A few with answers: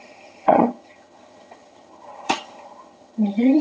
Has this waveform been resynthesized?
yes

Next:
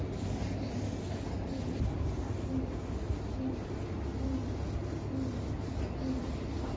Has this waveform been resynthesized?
no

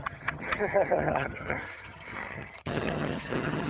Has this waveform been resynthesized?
yes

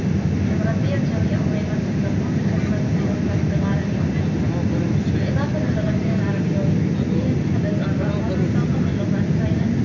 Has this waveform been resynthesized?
no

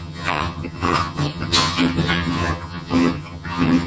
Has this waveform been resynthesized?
yes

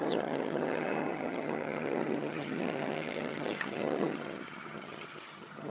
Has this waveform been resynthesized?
yes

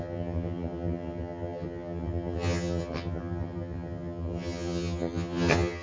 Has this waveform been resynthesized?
yes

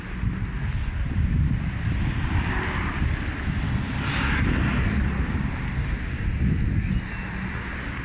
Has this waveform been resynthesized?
no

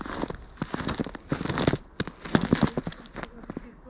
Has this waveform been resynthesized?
no